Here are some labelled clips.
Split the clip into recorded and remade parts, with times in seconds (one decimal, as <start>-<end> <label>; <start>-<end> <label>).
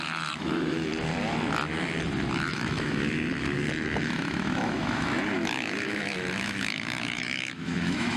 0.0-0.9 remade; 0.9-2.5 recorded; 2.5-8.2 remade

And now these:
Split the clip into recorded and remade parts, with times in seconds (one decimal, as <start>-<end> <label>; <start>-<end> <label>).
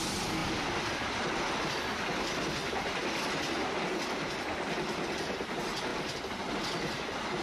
0.0-2.6 recorded; 2.6-3.3 remade; 3.3-7.4 recorded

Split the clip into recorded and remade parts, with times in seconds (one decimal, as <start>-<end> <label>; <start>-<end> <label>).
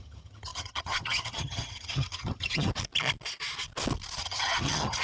0.0-2.7 remade; 2.7-4.2 recorded; 4.2-5.0 remade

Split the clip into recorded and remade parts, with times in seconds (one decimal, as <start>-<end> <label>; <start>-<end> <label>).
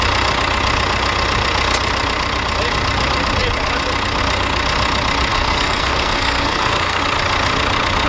0.0-5.3 recorded; 5.3-7.0 remade; 7.0-8.1 recorded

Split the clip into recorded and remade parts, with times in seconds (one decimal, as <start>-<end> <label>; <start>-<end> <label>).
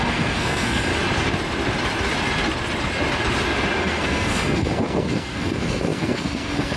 0.0-0.9 remade; 0.9-3.8 recorded; 3.8-6.8 remade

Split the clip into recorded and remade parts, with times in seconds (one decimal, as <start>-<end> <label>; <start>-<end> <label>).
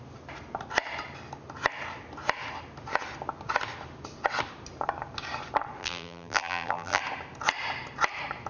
0.0-5.8 recorded; 5.8-7.0 remade; 7.0-8.5 recorded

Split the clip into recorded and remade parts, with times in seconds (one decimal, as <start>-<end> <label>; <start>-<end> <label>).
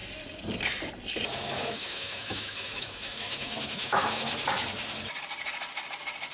0.0-1.3 recorded; 1.3-4.3 remade; 4.3-6.3 recorded